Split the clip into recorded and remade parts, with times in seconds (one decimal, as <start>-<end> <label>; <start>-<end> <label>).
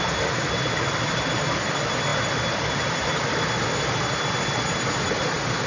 0.0-5.7 recorded